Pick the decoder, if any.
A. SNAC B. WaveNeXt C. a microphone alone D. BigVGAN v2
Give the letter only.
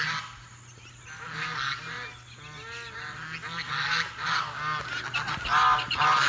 C